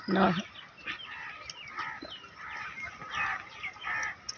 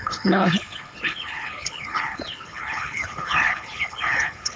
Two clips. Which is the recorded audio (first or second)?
first